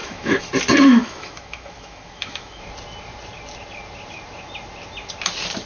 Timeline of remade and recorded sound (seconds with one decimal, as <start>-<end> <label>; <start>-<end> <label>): 0.0-0.5 remade; 0.5-1.0 recorded; 1.0-2.6 remade; 2.6-5.7 recorded